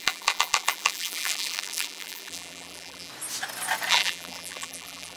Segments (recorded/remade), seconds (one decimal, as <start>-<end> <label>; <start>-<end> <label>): 0.0-3.1 remade; 3.1-3.9 recorded; 3.9-5.2 remade